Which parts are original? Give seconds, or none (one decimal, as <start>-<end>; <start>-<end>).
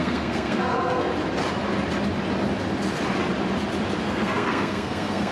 1.1-4.0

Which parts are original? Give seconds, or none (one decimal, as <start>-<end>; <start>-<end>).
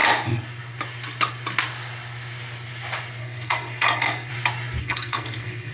0.0-3.2; 4.3-4.8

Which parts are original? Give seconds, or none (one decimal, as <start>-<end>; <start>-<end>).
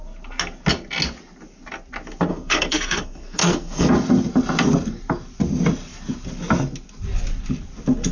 0.0-2.3; 3.9-8.1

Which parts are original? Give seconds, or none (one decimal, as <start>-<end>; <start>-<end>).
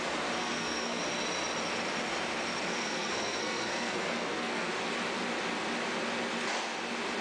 0.0-0.4; 1.0-2.7; 4.7-7.2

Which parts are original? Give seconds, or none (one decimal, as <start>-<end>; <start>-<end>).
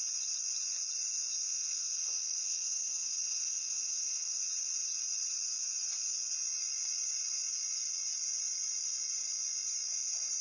0.0-1.4; 4.4-10.4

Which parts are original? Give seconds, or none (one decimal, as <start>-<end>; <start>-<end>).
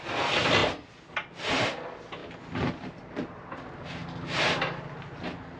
0.0-5.6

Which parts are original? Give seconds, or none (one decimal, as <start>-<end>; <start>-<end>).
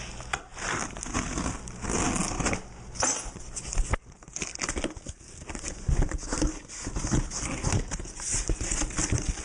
0.0-9.4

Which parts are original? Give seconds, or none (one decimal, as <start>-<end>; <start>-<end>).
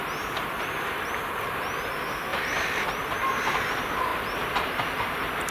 0.0-5.5